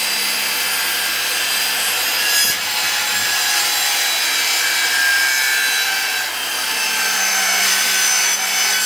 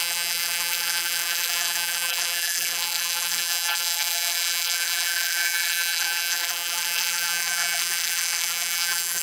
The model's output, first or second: second